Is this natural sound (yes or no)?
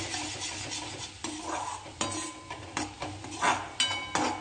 yes